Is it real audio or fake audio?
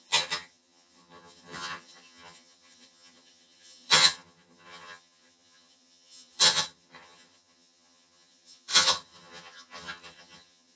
fake